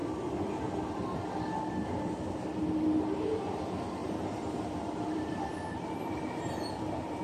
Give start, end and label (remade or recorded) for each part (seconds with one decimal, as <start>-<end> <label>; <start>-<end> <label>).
0.0-4.0 recorded; 4.0-6.7 remade; 6.7-7.2 recorded